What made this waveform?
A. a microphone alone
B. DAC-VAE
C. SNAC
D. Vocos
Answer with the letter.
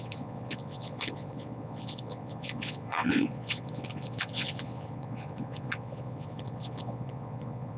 D